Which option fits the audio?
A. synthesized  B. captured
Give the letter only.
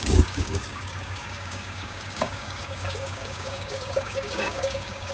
A